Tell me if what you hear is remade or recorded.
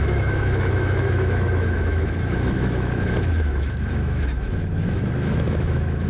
remade